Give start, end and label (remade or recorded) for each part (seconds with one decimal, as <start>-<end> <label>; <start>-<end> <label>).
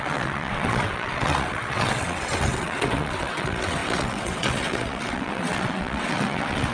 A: 0.0-6.7 remade